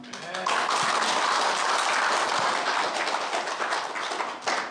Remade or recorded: recorded